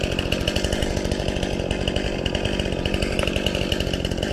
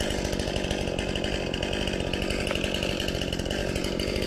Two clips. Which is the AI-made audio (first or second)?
first